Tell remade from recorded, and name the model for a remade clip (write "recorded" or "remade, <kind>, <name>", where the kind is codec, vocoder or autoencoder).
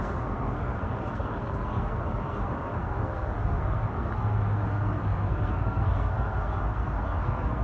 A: remade, codec, SNAC